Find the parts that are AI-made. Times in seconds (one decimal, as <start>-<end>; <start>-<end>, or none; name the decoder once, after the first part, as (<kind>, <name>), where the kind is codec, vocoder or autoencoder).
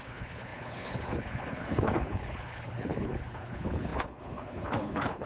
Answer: 0.0-5.3 (codec, HILCodec)